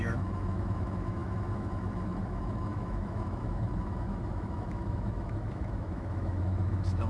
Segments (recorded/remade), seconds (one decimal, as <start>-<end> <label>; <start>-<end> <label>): 0.0-7.1 remade